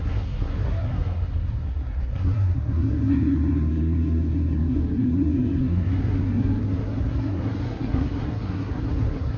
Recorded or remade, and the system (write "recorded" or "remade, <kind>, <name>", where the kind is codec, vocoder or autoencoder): remade, codec, SNAC